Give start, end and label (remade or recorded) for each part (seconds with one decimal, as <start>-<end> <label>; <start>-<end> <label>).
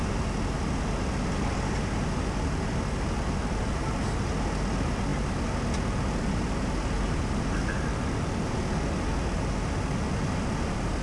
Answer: 0.0-11.0 recorded